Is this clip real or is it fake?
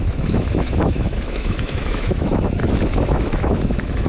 fake